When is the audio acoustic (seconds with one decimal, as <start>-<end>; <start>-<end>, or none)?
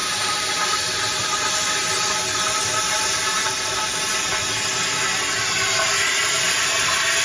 0.6-7.2